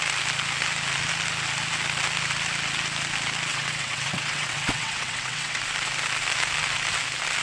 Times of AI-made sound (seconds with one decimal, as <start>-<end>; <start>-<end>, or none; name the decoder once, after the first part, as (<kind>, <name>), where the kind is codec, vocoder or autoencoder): 3.5-5.6 (vocoder, WaveNeXt)